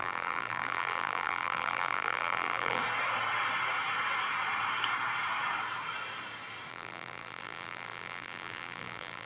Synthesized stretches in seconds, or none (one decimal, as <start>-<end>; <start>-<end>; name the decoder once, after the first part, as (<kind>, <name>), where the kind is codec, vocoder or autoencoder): 0.0-2.8 (vocoder, BigVGAN v2); 6.7-9.3